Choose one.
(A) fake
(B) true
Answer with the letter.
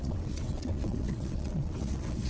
A